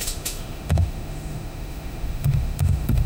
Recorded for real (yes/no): no